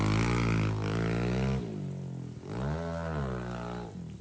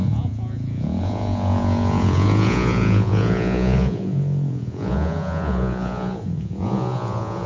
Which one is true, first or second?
first